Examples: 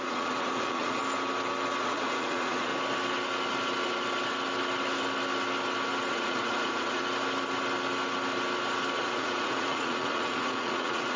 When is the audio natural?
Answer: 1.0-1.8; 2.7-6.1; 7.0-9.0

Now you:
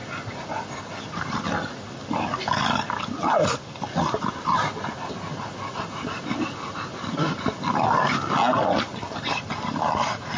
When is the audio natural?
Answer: 0.0-10.4

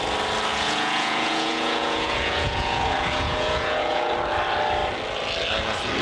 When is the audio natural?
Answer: 0.0-0.5; 4.1-6.0

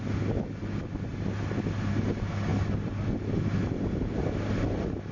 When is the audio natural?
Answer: 0.0-5.1

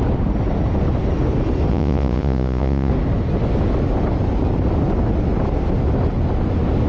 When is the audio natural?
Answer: 0.0-1.7; 2.9-6.9

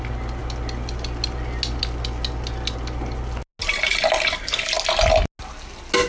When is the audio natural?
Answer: 0.0-6.1